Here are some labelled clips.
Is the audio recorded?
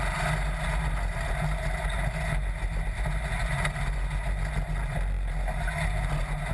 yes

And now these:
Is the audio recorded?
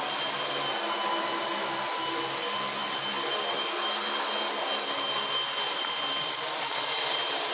yes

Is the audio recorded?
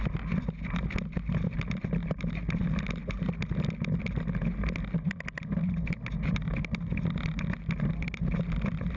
yes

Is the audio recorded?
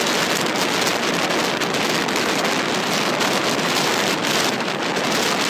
yes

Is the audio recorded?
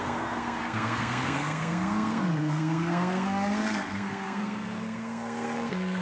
no